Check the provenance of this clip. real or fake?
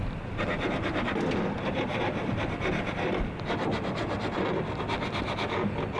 real